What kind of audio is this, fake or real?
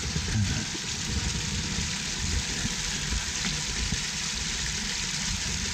real